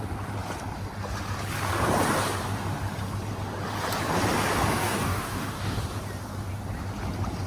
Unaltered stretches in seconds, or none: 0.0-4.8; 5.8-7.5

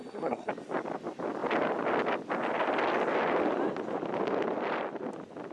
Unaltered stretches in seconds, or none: 0.5-5.5

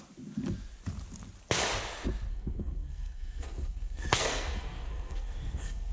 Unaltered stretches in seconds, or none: 0.0-2.3

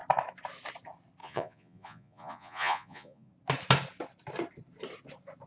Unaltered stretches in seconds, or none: 0.0-1.2; 3.3-5.5